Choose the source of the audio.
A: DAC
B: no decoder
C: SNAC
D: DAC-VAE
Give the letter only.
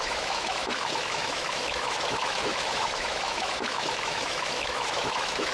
D